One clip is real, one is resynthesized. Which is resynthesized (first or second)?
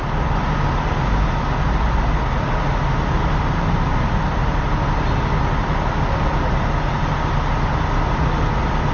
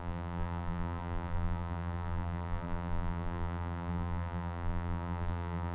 second